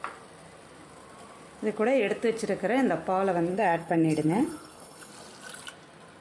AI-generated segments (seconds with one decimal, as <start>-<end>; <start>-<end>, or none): 3.5-5.1